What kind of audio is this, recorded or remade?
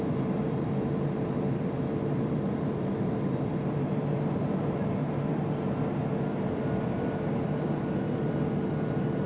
remade